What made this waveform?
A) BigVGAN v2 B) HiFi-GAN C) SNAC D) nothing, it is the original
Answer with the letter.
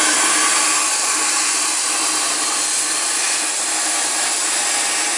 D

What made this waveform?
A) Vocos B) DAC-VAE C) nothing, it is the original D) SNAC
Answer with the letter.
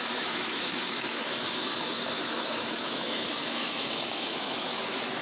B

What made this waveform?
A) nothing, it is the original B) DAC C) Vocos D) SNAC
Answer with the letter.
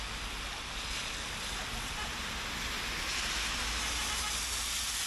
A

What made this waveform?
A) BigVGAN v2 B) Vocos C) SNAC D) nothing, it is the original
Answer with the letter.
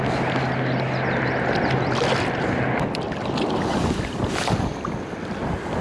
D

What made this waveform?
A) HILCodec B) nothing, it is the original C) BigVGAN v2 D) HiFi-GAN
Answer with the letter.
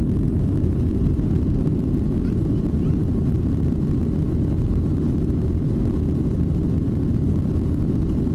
B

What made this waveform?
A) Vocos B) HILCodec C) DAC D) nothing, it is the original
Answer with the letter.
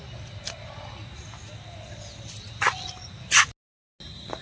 D